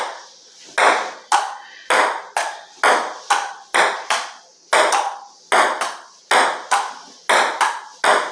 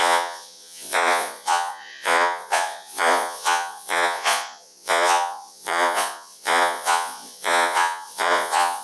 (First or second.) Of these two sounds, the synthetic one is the second